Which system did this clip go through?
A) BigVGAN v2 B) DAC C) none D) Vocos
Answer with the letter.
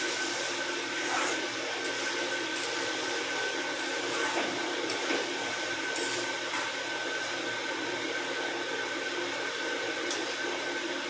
A